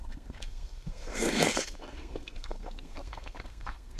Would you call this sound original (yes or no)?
no